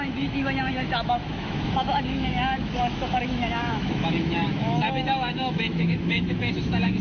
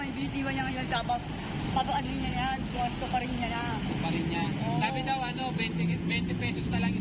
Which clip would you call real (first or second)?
second